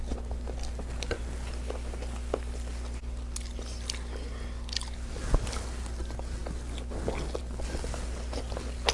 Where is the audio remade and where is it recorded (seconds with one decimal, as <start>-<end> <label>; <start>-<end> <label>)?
0.0-8.9 recorded

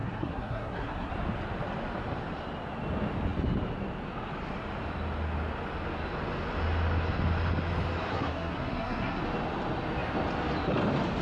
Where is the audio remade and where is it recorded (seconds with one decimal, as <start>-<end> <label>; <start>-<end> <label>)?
0.0-1.1 remade; 1.1-8.1 recorded; 8.1-9.2 remade; 9.2-11.2 recorded